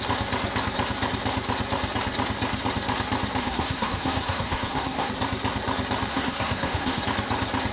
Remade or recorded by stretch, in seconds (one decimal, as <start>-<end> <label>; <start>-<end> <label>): 0.0-3.4 recorded; 3.4-5.1 remade; 5.1-6.1 recorded; 6.1-7.0 remade; 7.0-7.7 recorded